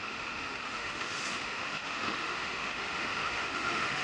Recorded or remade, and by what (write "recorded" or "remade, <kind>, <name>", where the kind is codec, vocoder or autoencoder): remade, autoencoder, DAC-VAE